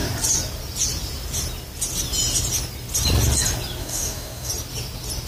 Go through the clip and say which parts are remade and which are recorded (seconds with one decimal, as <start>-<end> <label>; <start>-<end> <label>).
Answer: 0.0-3.8 recorded; 3.8-4.5 remade; 4.5-5.3 recorded